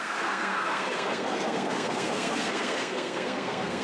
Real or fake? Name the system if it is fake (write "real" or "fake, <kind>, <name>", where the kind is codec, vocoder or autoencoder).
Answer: fake, codec, SNAC